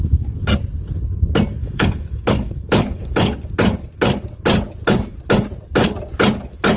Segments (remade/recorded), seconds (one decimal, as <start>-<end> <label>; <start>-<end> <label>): 0.0-1.6 recorded; 1.6-3.5 remade; 3.5-6.8 recorded